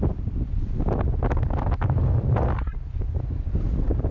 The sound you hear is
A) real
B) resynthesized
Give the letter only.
A